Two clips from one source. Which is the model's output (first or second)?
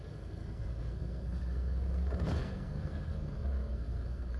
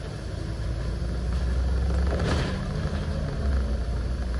first